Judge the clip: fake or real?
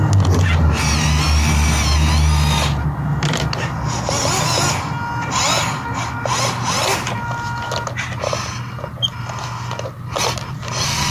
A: real